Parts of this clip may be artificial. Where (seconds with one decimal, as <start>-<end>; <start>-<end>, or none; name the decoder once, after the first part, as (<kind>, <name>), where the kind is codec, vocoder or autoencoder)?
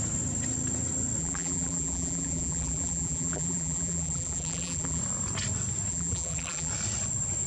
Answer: 1.2-5.0 (vocoder, BigVGAN v2); 5.9-6.7